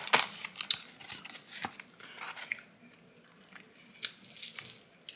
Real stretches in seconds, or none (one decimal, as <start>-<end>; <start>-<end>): 0.0-5.2